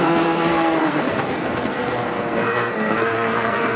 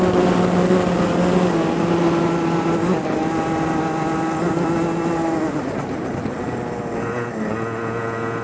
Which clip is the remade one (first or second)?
first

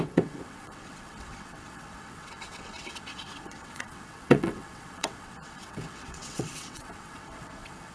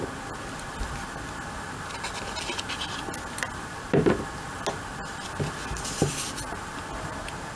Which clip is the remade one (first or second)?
first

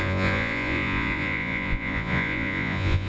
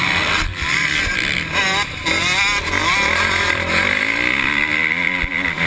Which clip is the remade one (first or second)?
first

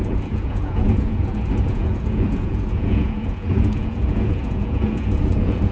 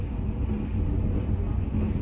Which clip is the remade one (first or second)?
first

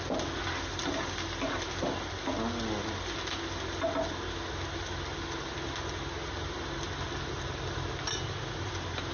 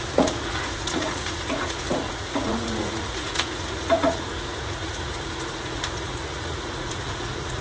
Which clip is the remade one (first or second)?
second